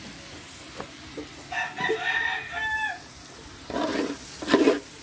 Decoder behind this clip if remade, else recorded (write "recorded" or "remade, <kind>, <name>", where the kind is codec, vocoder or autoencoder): recorded